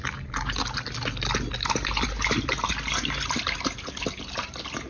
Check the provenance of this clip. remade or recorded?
recorded